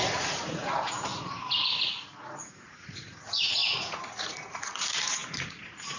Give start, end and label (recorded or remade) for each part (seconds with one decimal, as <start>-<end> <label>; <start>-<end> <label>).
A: 0.0-6.0 remade